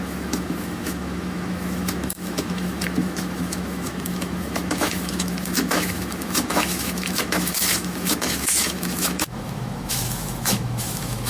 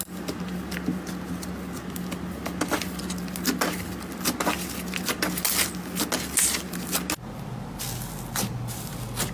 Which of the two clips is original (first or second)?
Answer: second